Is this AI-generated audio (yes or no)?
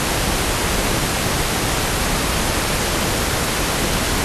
no